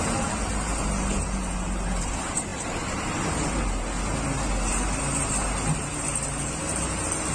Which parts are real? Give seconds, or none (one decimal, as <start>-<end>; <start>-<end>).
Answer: 0.0-7.3